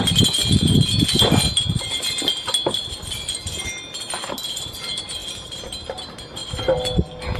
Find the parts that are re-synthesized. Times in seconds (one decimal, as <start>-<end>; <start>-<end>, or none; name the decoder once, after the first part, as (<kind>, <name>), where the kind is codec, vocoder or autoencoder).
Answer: 5.2-6.0 (vocoder, BigVGAN v2); 6.4-7.4